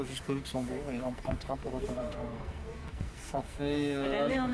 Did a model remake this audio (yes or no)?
yes